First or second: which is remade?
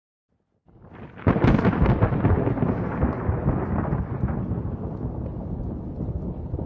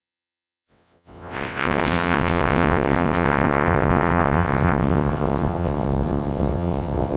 second